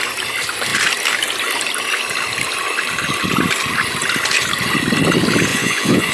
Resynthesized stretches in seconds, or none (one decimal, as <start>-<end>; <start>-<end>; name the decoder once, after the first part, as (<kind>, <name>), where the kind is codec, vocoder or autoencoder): 5.5-6.1 (vocoder, Vocos)